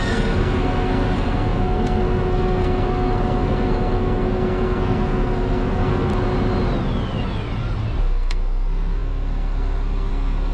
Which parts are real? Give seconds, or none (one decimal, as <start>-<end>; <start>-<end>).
6.1-8.0